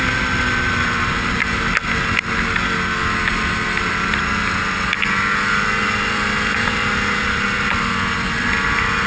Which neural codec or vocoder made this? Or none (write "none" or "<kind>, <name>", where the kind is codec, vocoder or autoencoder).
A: none